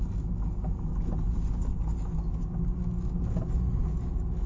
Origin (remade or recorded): recorded